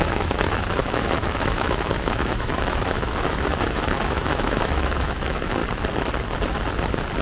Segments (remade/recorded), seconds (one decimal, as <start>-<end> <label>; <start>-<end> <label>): 0.0-5.6 remade; 5.6-7.2 recorded